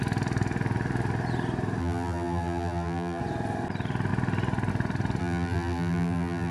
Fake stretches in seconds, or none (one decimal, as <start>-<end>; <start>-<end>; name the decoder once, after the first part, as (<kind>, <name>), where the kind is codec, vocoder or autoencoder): 1.8-3.2 (vocoder, BigVGAN v2); 5.2-6.5